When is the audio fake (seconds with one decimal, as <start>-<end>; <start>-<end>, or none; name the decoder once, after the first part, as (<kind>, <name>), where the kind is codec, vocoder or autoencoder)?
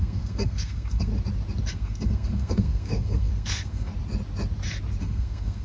0.0-1.1 (codec, SNAC); 1.7-3.9; 5.0-5.6